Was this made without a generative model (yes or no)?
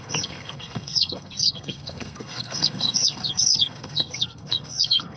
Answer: no